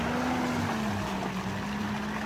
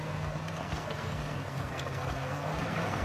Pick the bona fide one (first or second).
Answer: first